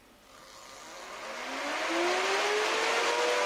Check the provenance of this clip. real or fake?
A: real